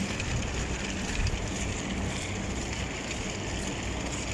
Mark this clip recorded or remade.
recorded